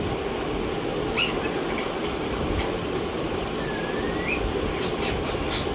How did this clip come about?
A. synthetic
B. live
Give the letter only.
B